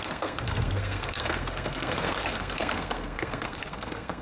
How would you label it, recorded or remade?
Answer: remade